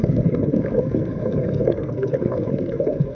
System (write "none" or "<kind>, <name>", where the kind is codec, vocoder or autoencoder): codec, SNAC